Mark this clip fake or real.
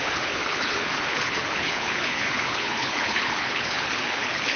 fake